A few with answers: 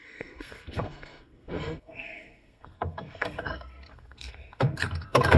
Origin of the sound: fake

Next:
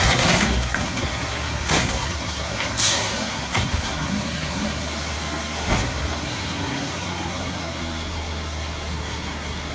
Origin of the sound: fake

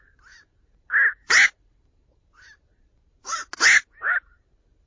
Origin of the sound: real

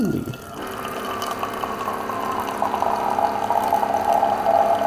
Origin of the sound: real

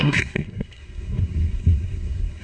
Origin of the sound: fake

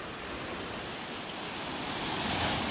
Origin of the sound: real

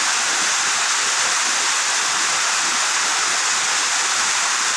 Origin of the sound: real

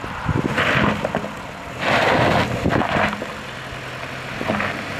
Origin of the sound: real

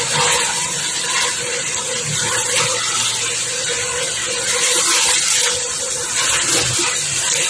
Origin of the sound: real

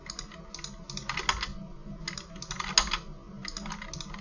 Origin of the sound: real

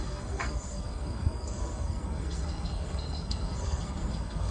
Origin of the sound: fake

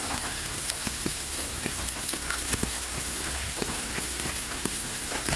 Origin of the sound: fake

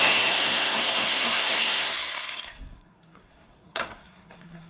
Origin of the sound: fake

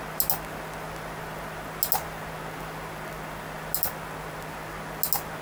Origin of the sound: real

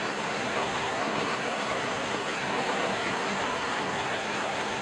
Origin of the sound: fake